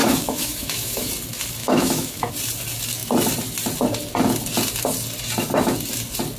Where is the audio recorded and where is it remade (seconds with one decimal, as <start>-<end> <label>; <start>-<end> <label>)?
0.0-1.1 remade; 1.1-1.6 recorded; 1.6-2.3 remade; 2.3-6.4 recorded